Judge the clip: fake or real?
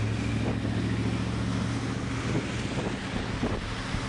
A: real